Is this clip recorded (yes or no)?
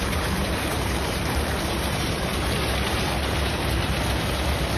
no